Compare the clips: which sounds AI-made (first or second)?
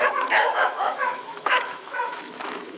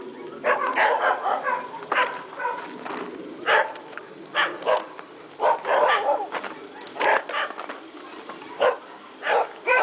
first